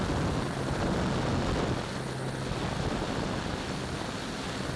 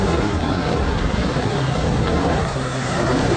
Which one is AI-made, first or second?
second